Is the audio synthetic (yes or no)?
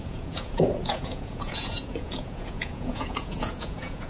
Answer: yes